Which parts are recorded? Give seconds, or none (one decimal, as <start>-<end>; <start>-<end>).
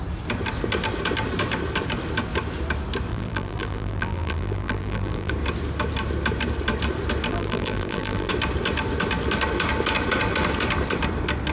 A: 0.0-3.1; 5.3-7.3; 8.3-11.5